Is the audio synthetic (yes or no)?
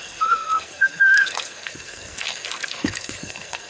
yes